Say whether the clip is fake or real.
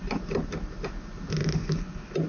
real